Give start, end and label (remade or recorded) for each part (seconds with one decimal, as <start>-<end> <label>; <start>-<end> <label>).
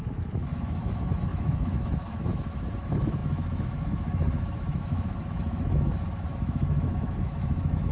0.0-7.9 remade